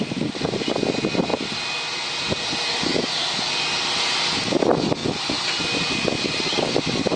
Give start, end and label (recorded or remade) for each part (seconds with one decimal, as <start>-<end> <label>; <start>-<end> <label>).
0.0-7.2 recorded